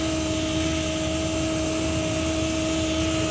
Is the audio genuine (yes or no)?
yes